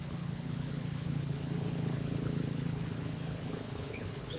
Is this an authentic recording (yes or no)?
no